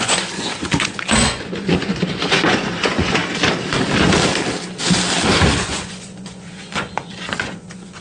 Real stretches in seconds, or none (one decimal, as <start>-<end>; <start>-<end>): 3.2-5.6